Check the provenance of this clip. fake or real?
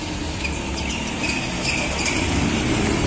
real